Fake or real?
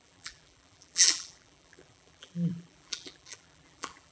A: fake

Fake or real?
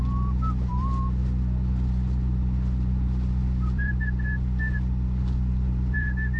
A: fake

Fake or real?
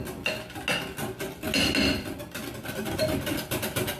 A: real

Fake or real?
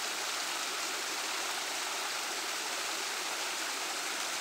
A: real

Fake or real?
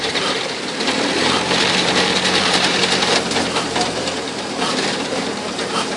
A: fake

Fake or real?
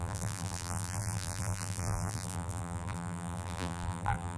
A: fake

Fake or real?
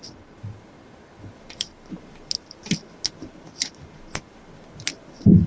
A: real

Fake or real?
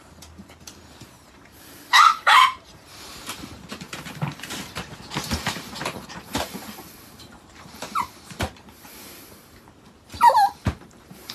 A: fake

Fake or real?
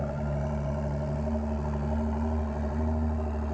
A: real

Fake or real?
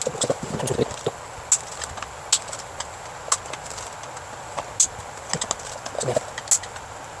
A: real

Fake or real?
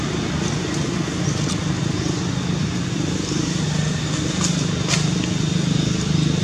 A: real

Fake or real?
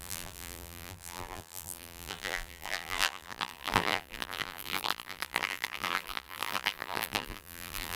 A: fake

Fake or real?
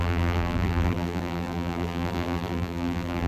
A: fake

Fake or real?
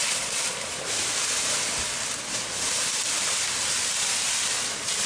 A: fake